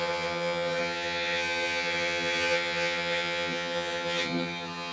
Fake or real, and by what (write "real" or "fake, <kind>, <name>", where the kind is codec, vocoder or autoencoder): fake, vocoder, HiFi-GAN